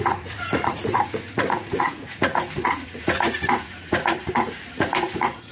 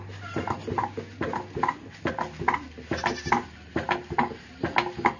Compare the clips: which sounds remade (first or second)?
first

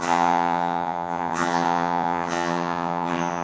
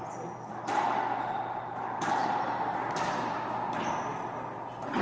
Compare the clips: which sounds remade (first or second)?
first